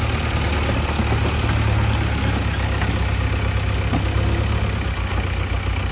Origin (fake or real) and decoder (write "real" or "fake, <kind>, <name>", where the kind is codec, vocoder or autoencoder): real